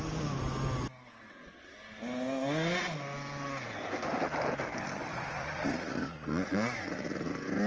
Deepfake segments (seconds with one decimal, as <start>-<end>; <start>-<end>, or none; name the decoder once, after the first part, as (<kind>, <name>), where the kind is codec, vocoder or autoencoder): 5.1-7.3 (vocoder, Vocos)